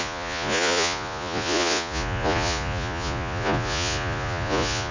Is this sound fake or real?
fake